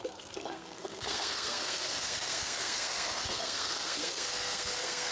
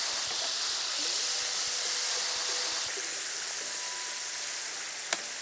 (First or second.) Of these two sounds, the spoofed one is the first